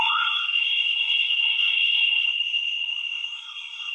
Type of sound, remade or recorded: remade